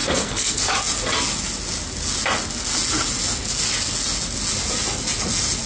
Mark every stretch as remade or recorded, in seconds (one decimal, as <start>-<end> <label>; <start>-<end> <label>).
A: 0.0-0.7 remade; 0.7-5.7 recorded